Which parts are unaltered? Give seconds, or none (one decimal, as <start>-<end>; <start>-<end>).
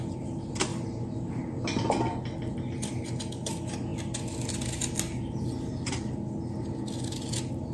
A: 0.0-0.7; 1.3-7.7